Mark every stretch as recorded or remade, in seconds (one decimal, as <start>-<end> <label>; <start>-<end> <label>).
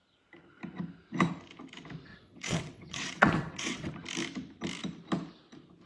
0.0-2.1 recorded; 2.1-3.9 remade; 3.9-5.9 recorded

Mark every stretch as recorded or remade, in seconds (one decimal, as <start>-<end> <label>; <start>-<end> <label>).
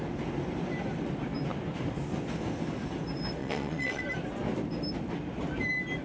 0.0-3.4 recorded; 3.4-4.0 remade; 4.0-6.0 recorded